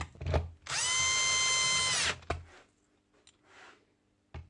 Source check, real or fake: real